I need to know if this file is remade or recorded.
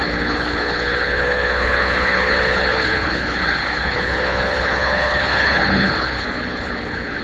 remade